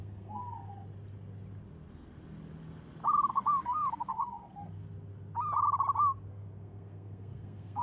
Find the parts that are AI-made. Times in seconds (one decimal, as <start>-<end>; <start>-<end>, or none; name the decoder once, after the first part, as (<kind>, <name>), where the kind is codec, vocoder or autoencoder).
0.0-0.4 (codec, SNAC); 3.3-4.8; 6.3-7.8